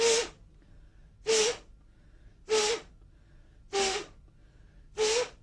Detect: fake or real real